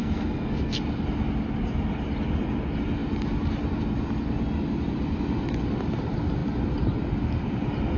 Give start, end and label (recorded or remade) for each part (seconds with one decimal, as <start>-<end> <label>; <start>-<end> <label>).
0.0-0.8 remade; 0.8-8.0 recorded